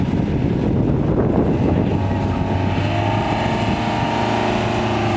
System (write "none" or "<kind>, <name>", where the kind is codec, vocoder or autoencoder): none